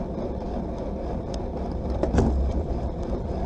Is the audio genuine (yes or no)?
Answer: no